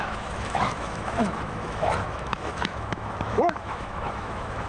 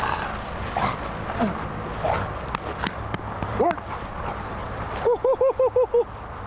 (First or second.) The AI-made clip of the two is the first